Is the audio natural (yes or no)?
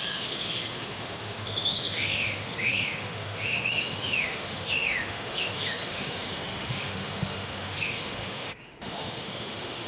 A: no